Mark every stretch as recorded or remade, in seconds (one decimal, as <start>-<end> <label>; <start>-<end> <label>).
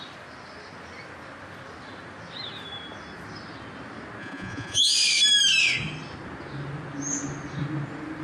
0.0-4.2 recorded; 4.2-4.9 remade; 4.9-8.2 recorded